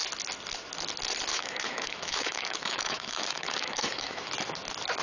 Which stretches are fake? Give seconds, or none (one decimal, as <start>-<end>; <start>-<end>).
1.3-4.3